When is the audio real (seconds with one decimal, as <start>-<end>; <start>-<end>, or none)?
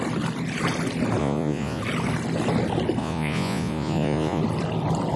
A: 0.0-1.2; 1.8-3.0; 4.4-5.2